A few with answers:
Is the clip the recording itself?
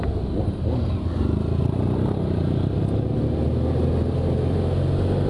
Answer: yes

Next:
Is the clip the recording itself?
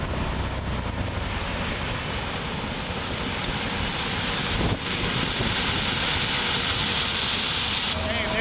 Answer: yes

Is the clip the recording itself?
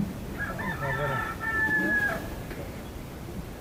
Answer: no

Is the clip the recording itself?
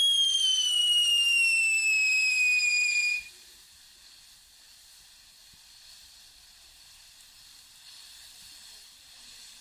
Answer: no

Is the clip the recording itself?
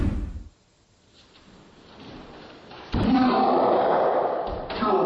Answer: no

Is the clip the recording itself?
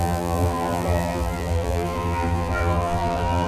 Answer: no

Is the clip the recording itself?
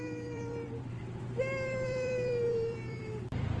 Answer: no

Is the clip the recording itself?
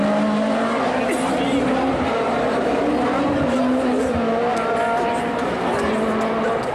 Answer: yes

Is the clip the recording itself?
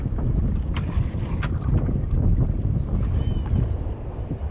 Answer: yes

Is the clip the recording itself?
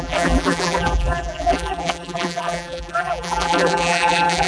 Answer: no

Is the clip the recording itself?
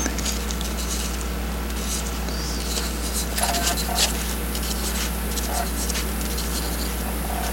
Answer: yes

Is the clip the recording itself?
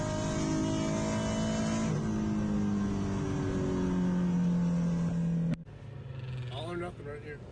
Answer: yes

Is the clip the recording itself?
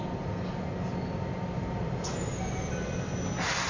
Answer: yes